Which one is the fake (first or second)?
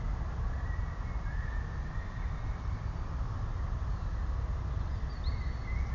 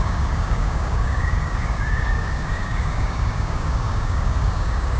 second